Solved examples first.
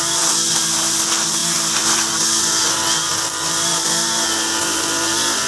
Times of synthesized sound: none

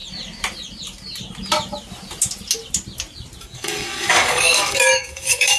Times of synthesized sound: 3.4-5.6 (codec, DAC)

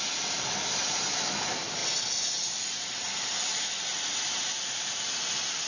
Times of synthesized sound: none

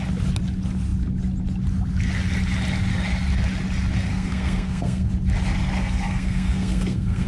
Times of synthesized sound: 4.1-5.1 (codec, SNAC); 5.8-7.3

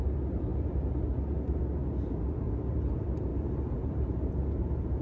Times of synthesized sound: 3.3-4.3 (vocoder, BigVGAN v2)

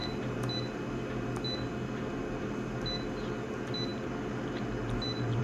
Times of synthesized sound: none

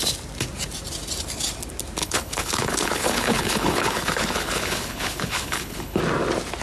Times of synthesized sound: 2.0-6.0 (codec, HILCodec)